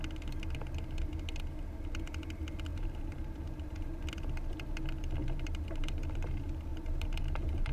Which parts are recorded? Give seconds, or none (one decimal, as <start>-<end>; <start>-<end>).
0.0-2.7; 4.0-5.2; 6.3-6.7